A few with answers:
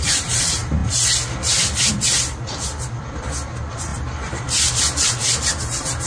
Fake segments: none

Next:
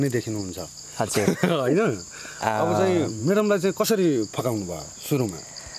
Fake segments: none

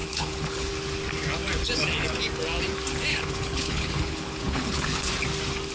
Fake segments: 0.0-0.7 (codec, HILCodec); 3.1-5.1

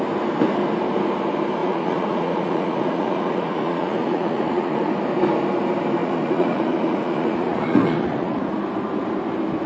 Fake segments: 1.6-4.9 (vocoder, Vocos); 6.0-8.4

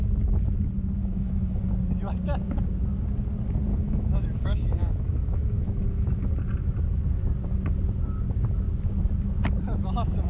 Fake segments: 1.0-1.7 (autoencoder, DAC-VAE); 3.7-6.3

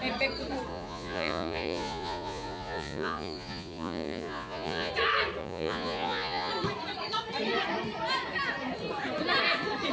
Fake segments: 0.7-4.9 (vocoder, Vocos); 5.4-6.5